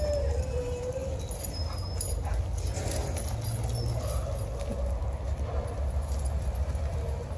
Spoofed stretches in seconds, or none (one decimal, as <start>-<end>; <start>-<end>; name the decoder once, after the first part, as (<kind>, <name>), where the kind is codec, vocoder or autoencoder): none